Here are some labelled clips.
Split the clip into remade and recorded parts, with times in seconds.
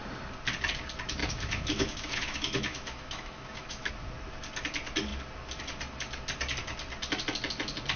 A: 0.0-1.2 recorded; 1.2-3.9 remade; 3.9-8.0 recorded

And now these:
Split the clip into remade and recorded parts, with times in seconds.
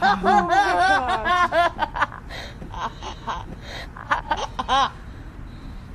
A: 0.0-1.8 remade; 1.8-5.3 recorded; 5.3-5.9 remade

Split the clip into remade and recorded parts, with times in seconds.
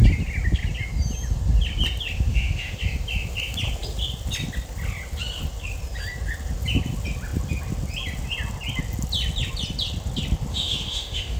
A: 0.0-2.3 recorded; 2.3-2.8 remade; 2.8-10.5 recorded; 10.5-11.4 remade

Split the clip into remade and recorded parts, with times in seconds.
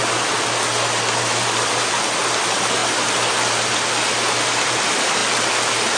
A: 0.0-6.0 recorded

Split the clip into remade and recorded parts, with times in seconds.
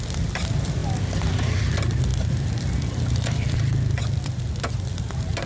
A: 0.0-0.8 remade; 0.8-1.3 recorded; 1.3-5.5 remade